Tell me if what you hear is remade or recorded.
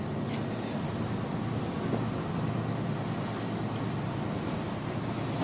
recorded